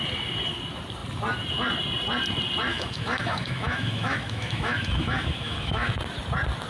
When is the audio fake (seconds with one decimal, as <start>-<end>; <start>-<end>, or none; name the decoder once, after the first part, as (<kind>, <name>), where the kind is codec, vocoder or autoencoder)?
2.7-5.9 (autoencoder, DAC-VAE)